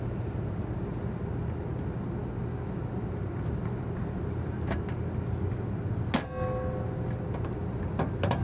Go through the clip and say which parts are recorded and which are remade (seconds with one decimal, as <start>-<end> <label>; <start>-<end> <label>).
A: 0.0-8.4 recorded